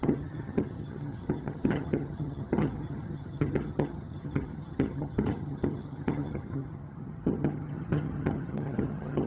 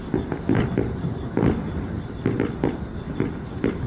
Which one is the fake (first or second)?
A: first